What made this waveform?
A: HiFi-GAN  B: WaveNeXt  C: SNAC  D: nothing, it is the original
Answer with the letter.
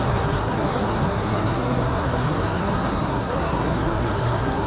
C